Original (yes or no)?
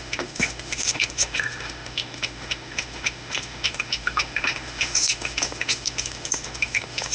no